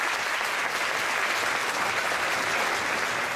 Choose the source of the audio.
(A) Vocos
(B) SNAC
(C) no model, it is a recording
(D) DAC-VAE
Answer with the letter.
C